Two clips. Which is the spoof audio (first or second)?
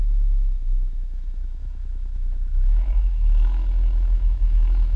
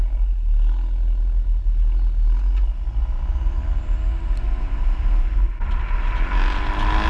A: first